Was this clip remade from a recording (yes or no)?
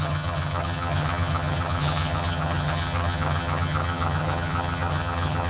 yes